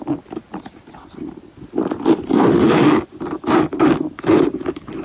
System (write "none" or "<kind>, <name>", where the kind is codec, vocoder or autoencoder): none